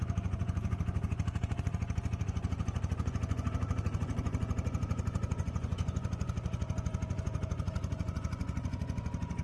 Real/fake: fake